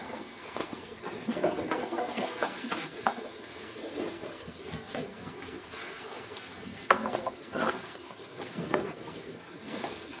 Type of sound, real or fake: fake